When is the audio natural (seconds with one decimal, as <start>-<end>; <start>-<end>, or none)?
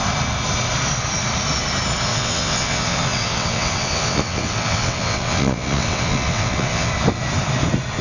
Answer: 0.0-2.1; 6.9-8.0